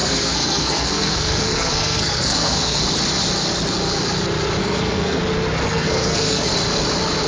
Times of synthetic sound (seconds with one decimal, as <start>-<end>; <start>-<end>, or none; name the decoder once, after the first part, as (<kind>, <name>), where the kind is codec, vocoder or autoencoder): 0.0-2.8 (codec, SNAC); 4.6-5.2; 5.7-6.5